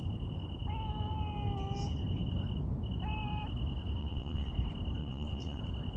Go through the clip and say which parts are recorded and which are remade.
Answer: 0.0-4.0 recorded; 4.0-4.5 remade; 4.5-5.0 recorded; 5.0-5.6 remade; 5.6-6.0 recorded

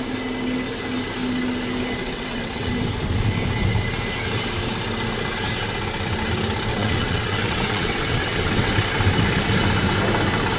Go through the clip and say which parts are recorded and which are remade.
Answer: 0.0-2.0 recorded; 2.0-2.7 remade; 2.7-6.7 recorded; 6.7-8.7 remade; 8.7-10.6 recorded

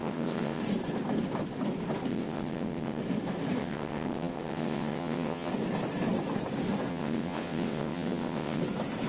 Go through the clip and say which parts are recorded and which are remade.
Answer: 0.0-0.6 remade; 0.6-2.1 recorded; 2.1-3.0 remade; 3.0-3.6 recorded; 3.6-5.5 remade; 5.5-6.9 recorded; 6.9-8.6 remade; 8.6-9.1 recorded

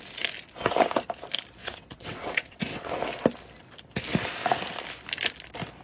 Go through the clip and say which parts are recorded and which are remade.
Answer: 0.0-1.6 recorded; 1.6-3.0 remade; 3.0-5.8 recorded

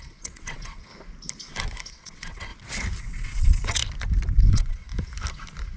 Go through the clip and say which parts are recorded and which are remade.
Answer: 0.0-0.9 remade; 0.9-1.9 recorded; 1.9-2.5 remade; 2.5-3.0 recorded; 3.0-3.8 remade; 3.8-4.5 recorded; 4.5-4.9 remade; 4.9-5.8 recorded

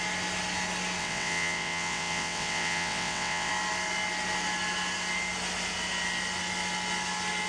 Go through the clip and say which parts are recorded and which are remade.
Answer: 0.0-1.0 recorded; 1.0-3.5 remade; 3.5-7.5 recorded